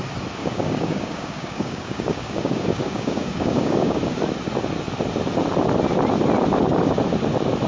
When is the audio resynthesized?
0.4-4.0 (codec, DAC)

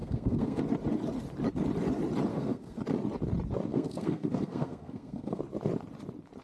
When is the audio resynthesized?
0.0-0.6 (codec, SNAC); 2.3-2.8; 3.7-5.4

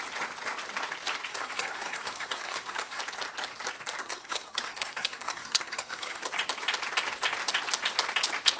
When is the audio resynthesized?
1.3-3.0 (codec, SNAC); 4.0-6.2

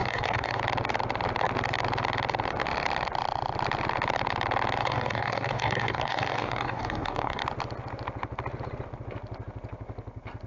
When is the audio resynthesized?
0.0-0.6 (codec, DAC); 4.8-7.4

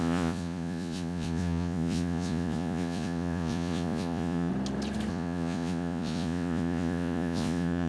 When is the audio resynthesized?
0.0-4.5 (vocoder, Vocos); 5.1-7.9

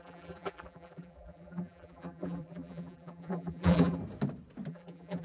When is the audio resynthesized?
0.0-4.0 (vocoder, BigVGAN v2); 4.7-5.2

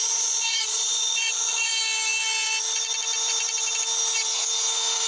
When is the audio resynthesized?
0.0-1.7 (vocoder, Vocos)